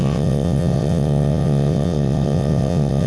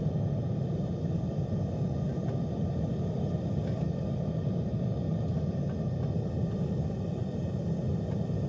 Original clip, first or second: second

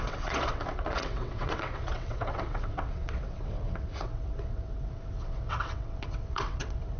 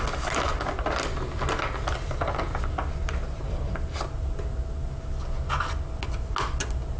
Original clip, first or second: second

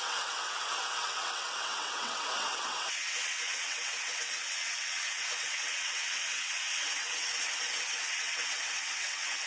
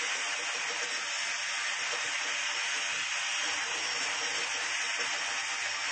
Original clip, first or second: second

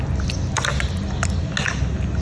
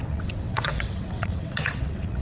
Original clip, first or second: first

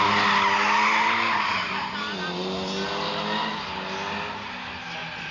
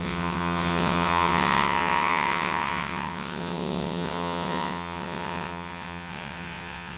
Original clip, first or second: first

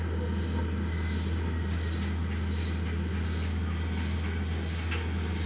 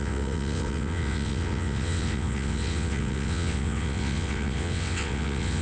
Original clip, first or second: first